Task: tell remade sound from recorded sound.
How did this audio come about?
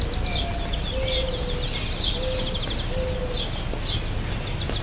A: recorded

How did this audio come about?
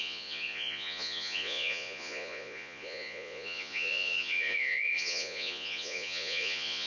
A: remade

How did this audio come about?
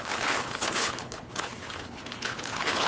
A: remade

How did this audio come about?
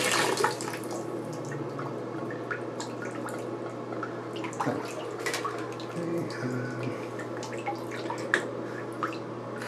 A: recorded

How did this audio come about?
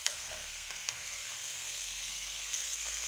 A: remade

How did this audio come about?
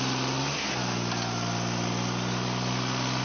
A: recorded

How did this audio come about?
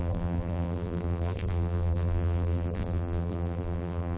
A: remade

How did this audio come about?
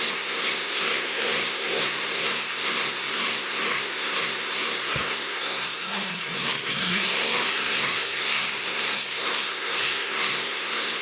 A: remade